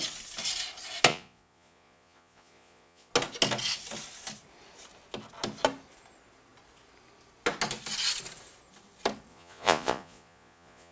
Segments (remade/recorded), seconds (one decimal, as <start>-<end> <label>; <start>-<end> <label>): 0.0-1.1 recorded; 1.1-3.1 remade; 3.1-9.3 recorded; 9.3-10.9 remade